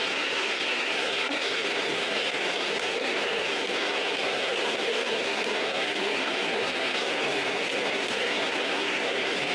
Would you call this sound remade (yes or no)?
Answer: yes